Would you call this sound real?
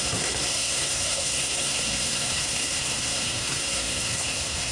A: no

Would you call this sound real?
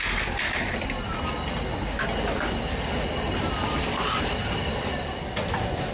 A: yes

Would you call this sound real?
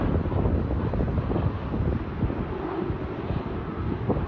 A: yes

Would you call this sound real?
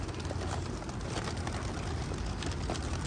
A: yes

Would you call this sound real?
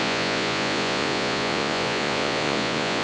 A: no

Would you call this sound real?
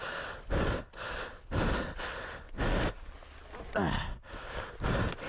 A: yes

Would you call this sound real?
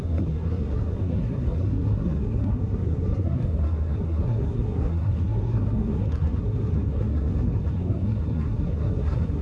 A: no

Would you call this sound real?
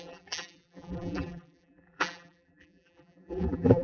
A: no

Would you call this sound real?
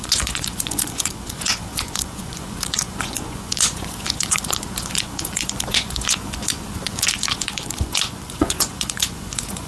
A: no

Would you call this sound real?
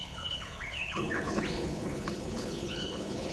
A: no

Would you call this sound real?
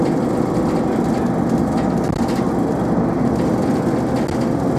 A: yes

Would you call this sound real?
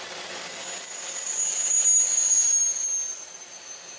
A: yes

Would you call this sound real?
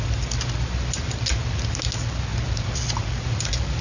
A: yes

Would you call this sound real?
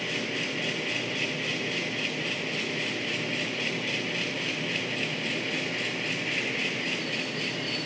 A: yes